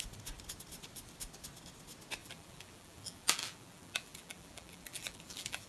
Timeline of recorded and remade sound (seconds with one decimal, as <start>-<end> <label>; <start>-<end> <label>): 0.0-2.2 recorded; 2.2-5.7 remade